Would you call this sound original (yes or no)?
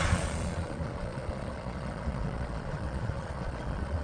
no